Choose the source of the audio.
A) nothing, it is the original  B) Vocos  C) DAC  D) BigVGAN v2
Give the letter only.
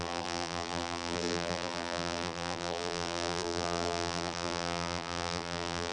D